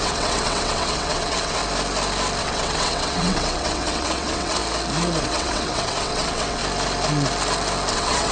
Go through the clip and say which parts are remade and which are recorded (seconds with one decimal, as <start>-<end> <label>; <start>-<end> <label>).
0.0-1.6 remade; 1.6-2.4 recorded; 2.4-4.6 remade; 4.6-5.2 recorded; 5.2-6.6 remade; 6.6-7.9 recorded; 7.9-8.3 remade